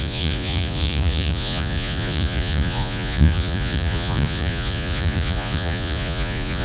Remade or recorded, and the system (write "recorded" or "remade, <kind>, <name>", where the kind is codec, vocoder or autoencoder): remade, vocoder, Vocos